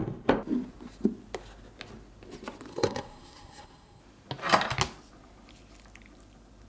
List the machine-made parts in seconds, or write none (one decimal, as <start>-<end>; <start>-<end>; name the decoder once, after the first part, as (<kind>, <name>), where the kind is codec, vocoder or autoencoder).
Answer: 2.7-4.0 (codec, SNAC)